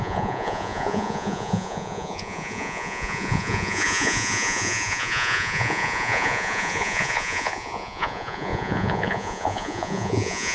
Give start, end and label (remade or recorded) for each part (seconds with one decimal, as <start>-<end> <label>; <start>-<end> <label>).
0.0-10.5 remade